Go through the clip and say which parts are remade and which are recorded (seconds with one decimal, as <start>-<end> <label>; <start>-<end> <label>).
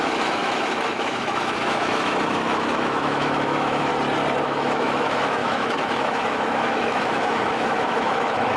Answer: 0.0-3.9 remade; 3.9-4.4 recorded; 4.4-8.6 remade